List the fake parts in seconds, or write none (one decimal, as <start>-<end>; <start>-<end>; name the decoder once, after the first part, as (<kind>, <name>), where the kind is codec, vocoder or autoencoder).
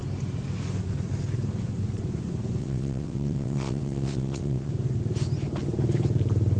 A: 2.6-4.7 (vocoder, WaveNeXt)